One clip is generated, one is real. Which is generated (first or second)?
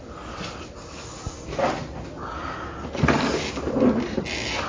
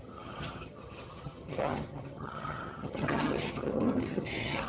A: second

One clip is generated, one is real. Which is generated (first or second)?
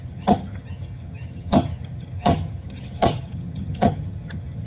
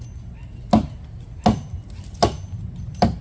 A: first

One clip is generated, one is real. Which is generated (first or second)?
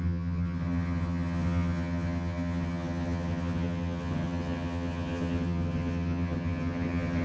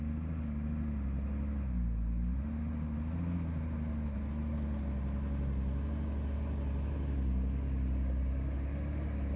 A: first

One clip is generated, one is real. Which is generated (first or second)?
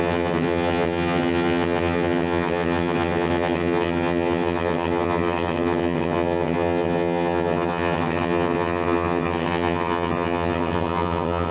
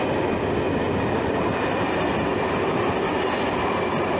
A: first